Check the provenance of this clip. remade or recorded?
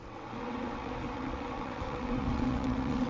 remade